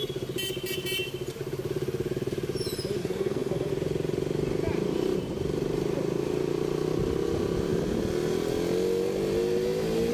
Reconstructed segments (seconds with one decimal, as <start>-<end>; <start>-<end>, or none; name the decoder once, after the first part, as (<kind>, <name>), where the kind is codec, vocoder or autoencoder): 3.0-3.7 (codec, SNAC)